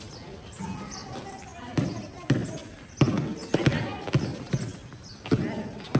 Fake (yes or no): no